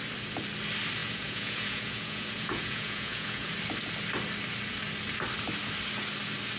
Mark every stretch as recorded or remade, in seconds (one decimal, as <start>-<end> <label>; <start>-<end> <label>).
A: 0.0-1.0 recorded; 1.0-3.5 remade; 3.5-6.6 recorded